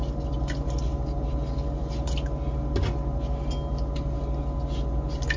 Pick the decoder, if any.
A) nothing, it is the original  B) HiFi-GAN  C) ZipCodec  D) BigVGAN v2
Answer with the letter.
A